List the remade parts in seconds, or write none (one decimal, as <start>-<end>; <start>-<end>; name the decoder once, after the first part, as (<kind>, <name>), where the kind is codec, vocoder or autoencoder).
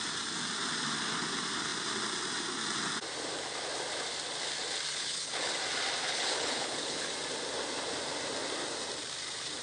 4.9-5.5 (codec, HILCodec); 6.0-7.1